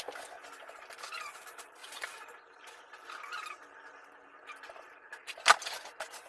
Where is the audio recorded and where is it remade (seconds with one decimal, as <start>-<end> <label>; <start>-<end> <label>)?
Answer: 0.0-1.8 recorded; 1.8-3.0 remade; 3.0-6.3 recorded